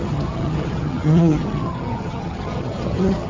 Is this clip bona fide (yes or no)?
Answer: no